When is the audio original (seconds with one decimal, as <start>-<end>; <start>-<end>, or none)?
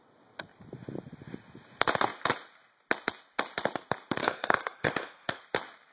0.0-4.2; 5.4-5.9